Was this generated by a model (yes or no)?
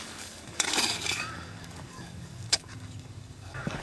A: yes